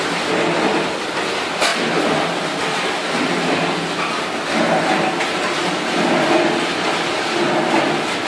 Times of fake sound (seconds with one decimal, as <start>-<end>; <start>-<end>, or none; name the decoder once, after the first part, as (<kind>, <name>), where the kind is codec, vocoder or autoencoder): none